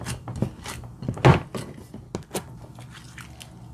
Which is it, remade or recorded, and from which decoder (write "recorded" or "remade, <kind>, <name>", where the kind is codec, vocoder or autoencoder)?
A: recorded